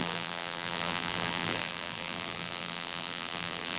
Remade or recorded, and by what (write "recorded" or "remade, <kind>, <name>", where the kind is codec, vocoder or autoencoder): remade, vocoder, BigVGAN v2